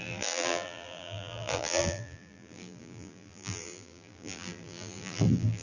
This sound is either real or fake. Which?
fake